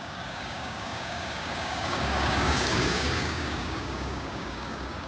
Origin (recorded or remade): remade